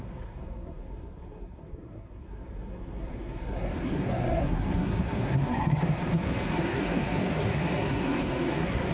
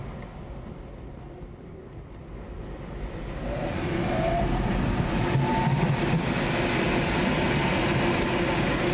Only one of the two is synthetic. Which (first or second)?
first